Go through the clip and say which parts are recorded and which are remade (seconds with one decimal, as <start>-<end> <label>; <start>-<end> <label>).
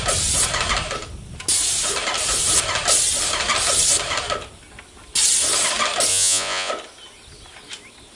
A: 0.0-6.1 recorded; 6.1-6.7 remade; 6.7-8.2 recorded